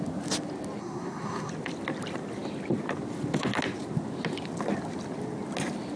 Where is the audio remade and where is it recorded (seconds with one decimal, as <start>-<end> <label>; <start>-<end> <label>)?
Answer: 0.0-0.8 recorded; 0.8-1.5 remade; 1.5-6.0 recorded